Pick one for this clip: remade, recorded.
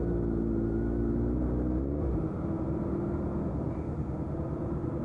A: recorded